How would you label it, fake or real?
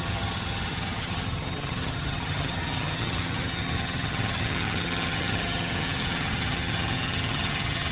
fake